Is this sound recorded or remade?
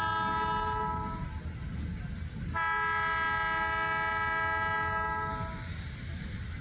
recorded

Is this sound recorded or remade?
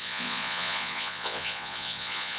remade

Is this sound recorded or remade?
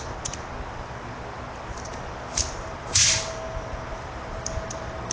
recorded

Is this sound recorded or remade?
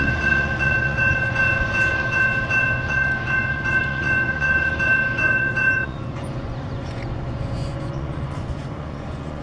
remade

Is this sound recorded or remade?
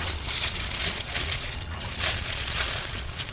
remade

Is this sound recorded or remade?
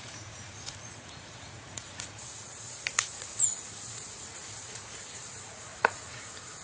remade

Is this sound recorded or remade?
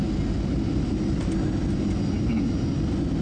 recorded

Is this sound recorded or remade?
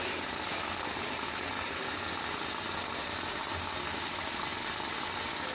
recorded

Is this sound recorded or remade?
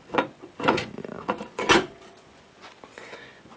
remade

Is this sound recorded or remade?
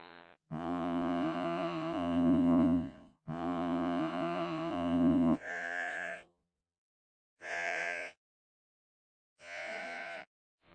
remade